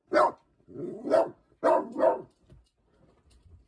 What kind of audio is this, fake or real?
real